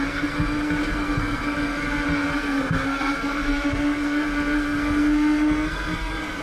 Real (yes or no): no